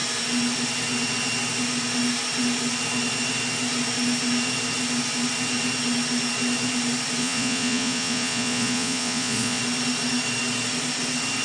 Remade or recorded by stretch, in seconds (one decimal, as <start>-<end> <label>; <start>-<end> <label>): 0.0-7.2 recorded; 7.2-9.6 remade; 9.6-11.4 recorded